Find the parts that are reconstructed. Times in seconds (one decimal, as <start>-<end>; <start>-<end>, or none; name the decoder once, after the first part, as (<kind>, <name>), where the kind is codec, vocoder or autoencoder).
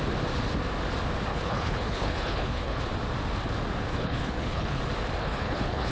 1.3-2.8 (codec, HILCodec); 3.9-4.8; 5.2-5.9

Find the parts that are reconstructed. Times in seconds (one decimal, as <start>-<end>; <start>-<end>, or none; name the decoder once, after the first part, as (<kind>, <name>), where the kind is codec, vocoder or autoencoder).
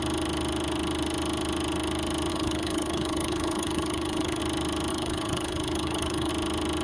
2.3-4.4 (codec, HILCodec); 4.9-6.3